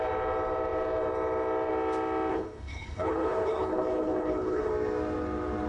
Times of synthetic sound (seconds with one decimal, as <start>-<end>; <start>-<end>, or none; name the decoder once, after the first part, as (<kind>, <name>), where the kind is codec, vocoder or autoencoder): 2.3-4.7 (codec, HILCodec)